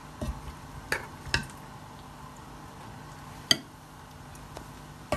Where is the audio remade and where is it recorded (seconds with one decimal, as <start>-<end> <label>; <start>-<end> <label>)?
0.0-5.2 recorded